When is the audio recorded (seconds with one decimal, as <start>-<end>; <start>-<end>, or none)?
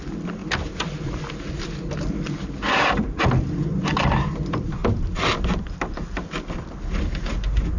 0.0-7.8